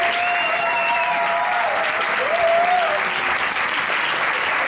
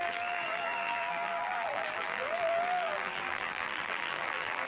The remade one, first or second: second